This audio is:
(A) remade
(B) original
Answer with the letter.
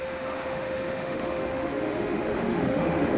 A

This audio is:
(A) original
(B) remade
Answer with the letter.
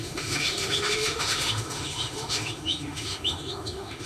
B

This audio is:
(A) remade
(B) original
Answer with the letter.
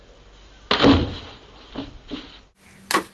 B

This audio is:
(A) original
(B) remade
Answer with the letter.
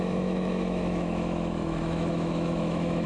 B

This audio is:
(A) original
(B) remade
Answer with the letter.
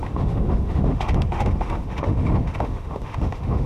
B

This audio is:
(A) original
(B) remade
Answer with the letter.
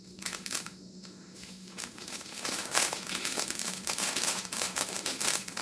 B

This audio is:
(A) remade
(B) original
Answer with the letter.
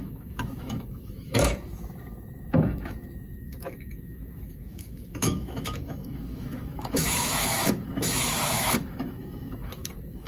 A